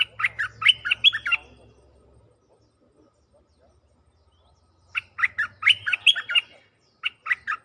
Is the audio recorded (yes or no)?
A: yes